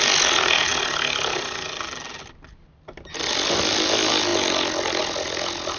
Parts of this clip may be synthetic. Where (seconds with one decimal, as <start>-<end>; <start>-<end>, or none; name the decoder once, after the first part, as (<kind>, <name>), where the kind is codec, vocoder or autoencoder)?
none

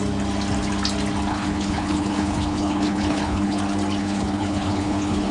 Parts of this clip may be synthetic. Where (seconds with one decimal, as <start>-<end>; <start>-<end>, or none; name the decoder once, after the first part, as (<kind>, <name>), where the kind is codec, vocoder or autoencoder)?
1.3-3.6 (codec, HILCodec); 4.0-5.3

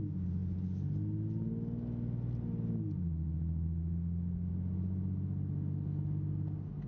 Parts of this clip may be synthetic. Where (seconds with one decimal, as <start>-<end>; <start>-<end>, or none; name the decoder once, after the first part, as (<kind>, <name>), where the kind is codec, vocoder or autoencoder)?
none

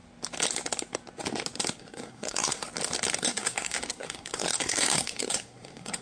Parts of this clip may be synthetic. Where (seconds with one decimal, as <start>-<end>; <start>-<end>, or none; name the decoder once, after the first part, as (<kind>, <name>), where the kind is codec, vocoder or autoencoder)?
1.8-2.6 (codec, SNAC); 3.2-6.0

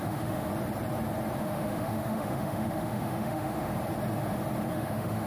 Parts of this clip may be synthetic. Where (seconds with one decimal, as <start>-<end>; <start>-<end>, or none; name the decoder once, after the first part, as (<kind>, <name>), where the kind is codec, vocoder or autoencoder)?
0.0-0.5 (autoencoder, DAC-VAE); 1.4-3.7; 4.7-5.3

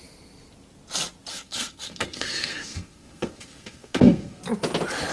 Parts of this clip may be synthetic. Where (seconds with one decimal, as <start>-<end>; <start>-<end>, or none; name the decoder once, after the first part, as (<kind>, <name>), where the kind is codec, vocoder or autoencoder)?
1.3-4.4 (codec, SNAC)

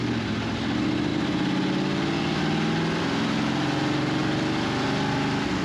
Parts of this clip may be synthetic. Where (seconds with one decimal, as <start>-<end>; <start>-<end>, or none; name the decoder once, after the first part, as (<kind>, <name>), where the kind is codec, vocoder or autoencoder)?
none

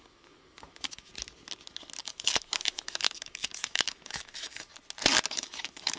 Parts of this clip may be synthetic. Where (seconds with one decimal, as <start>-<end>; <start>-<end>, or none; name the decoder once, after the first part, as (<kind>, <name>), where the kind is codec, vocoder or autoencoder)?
0.0-1.1 (autoencoder, DAC-VAE); 2.0-4.7; 5.3-6.0